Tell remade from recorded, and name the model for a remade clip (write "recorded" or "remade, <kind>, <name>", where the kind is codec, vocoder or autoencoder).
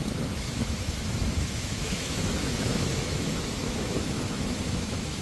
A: remade, autoencoder, DAC-VAE